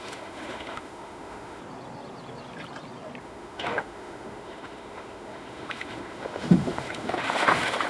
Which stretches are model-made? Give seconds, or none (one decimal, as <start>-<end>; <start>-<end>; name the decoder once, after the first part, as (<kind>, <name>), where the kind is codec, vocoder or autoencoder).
0.0-1.6 (autoencoder, DAC-VAE); 3.2-7.9